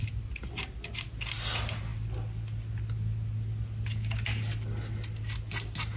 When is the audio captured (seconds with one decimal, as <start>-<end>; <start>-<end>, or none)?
0.0-6.0